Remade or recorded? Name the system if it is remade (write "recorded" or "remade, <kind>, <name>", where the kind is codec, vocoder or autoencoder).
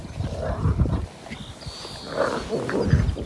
recorded